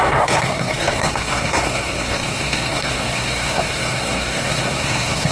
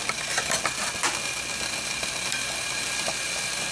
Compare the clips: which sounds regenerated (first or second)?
first